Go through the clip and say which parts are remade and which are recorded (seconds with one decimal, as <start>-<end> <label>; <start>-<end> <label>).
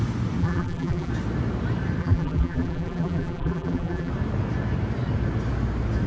0.0-0.4 recorded; 0.4-1.1 remade; 1.1-2.0 recorded; 2.0-4.1 remade; 4.1-6.1 recorded